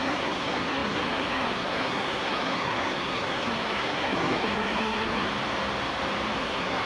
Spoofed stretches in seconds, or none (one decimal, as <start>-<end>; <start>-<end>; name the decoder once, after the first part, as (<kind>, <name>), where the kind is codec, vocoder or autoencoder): 0.0-5.3 (codec, SNAC); 6.4-6.9